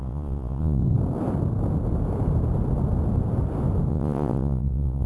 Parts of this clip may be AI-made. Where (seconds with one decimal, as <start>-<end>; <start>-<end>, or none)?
0.0-0.8; 3.9-5.1